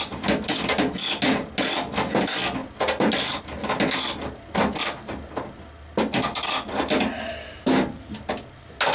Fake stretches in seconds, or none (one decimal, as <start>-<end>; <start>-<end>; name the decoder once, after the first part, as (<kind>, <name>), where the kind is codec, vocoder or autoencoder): none